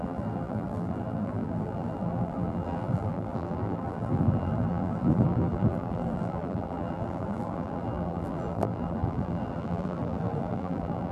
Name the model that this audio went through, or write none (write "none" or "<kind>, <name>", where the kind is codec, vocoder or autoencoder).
vocoder, BigVGAN v2